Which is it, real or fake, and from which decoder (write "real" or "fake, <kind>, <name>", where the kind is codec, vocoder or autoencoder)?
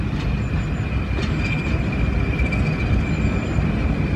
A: real